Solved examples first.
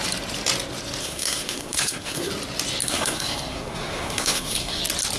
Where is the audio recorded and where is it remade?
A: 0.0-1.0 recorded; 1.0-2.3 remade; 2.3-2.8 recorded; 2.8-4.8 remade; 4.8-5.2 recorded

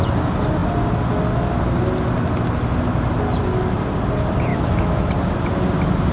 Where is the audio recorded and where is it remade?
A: 0.0-4.5 recorded; 4.5-5.1 remade; 5.1-6.1 recorded

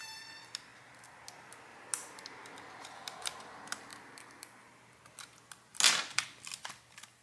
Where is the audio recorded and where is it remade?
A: 0.0-7.2 recorded

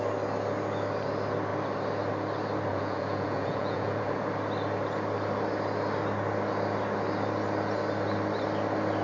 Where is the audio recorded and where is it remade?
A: 0.0-2.7 recorded; 2.7-4.2 remade; 4.2-9.0 recorded

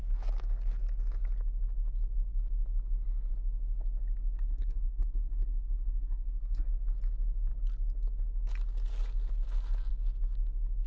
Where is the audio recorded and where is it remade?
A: 0.0-4.5 recorded; 4.5-6.7 remade; 6.7-10.9 recorded